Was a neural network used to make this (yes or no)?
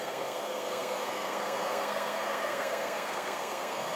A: yes